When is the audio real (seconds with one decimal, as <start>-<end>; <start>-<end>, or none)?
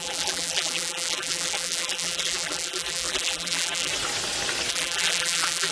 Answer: 3.9-4.7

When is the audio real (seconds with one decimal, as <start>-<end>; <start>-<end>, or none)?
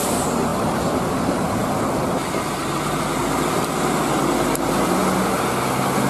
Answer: 0.0-6.1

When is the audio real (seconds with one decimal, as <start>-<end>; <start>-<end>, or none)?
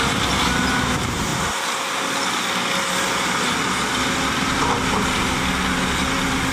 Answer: 0.0-6.5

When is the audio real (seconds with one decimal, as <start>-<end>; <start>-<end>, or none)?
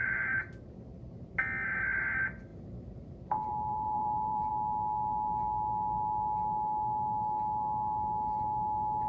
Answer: 0.7-2.5; 4.5-9.1